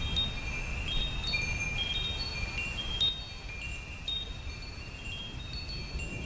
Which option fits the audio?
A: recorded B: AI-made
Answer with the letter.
A